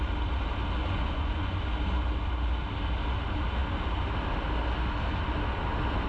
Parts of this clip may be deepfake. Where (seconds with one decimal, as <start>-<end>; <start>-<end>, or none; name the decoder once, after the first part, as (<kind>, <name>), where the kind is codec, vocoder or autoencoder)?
0.8-1.5 (vocoder, Vocos)